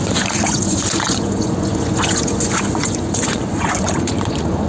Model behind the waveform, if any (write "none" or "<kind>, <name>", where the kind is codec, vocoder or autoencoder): vocoder, Vocos